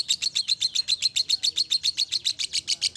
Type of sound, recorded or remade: recorded